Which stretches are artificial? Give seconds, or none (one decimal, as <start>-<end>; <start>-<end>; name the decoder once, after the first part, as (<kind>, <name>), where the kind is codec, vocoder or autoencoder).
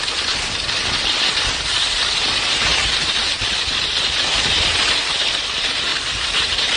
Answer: 2.7-3.4 (vocoder, BigVGAN v2); 5.9-6.8